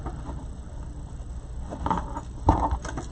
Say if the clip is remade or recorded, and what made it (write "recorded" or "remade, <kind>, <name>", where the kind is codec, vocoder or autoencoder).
recorded